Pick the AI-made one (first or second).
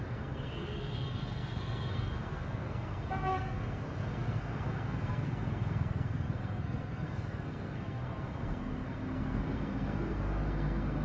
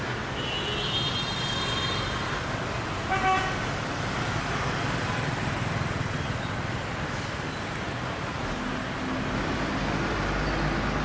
first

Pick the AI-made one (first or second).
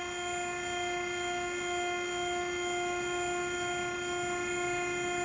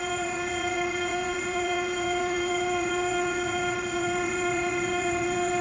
second